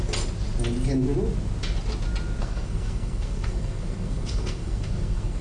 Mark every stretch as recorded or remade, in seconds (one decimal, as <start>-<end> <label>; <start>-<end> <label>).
0.0-2.4 recorded; 2.4-5.4 remade